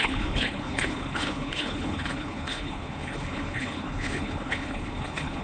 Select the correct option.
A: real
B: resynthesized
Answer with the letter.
B